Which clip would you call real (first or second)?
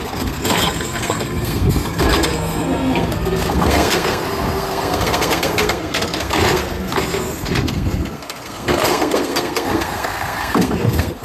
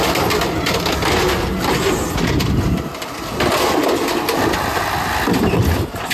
second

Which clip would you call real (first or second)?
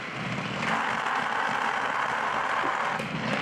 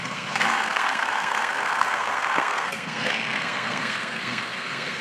first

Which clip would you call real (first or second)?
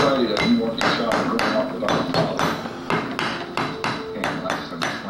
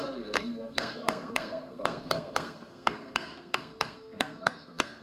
first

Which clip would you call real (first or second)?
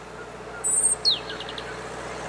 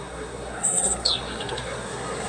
first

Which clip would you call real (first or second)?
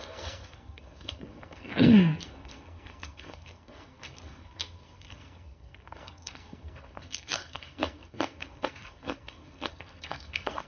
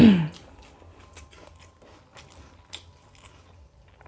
second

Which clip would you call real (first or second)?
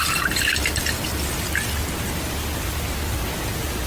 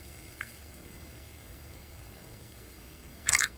first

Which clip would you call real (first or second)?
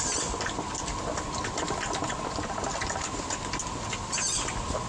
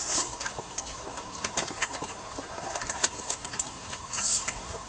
first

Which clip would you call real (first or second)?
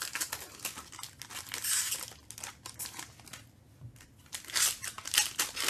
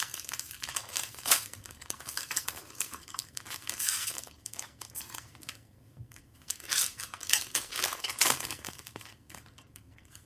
first